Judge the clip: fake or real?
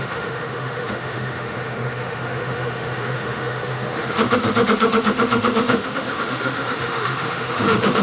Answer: fake